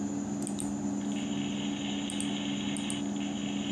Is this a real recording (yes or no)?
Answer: yes